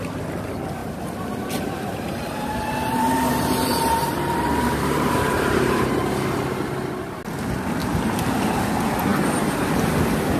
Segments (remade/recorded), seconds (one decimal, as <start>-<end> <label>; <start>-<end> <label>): 0.0-0.8 recorded; 0.8-6.0 remade; 6.0-7.8 recorded; 7.8-8.4 remade; 8.4-10.4 recorded